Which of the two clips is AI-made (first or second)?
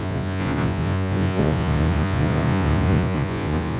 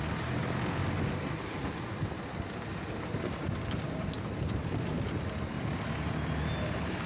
first